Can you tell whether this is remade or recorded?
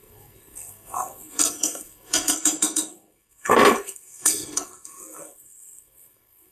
remade